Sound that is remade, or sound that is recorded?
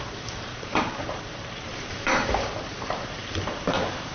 remade